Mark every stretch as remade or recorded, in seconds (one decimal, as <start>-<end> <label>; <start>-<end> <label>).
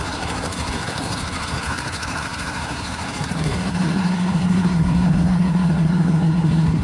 0.0-6.8 remade